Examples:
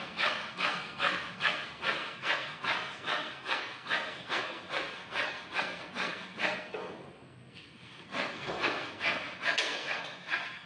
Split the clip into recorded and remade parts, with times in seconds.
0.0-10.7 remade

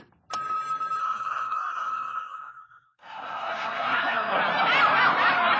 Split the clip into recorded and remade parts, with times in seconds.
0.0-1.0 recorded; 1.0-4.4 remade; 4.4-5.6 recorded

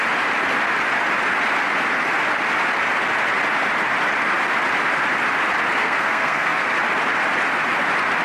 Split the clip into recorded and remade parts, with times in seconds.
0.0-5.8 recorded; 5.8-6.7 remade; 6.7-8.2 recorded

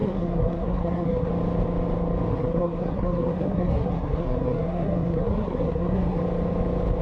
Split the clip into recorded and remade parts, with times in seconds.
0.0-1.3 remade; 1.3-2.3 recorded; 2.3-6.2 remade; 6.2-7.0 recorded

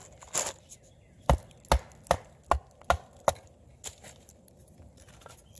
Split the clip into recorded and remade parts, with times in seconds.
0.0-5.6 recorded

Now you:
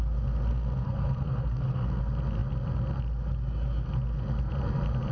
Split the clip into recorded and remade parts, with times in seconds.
0.0-0.5 recorded; 0.5-2.0 remade; 2.0-5.1 recorded

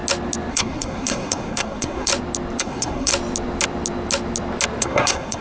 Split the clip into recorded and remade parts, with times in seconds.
0.0-0.5 recorded; 0.5-2.1 remade; 2.1-2.6 recorded; 2.6-3.1 remade; 3.1-4.8 recorded; 4.8-5.4 remade

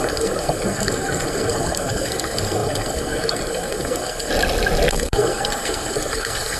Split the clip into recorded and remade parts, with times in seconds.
0.0-4.3 remade; 4.3-4.9 recorded; 4.9-6.6 remade